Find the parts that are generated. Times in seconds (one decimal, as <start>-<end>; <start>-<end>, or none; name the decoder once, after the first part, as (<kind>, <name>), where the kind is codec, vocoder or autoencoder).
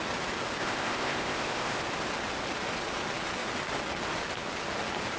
0.6-1.8 (codec, ZipCodec)